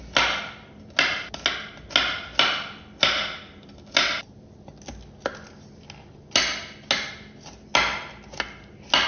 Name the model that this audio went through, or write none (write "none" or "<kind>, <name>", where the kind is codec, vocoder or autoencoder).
none